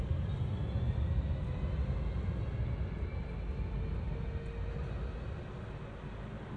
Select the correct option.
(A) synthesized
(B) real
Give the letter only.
B